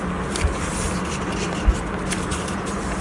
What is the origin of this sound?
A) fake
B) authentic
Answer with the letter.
B